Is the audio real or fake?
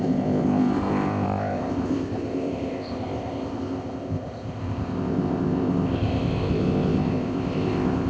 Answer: fake